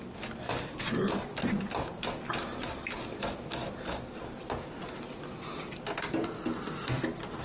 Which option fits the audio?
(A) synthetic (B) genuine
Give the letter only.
B